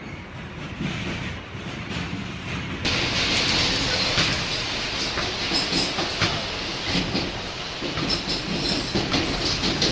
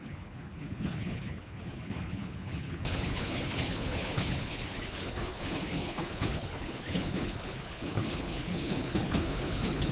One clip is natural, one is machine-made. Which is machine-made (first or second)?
second